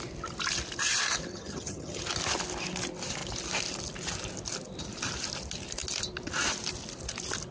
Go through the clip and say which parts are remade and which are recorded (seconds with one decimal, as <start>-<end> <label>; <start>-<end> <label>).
0.0-1.3 recorded; 1.3-2.0 remade; 2.0-7.5 recorded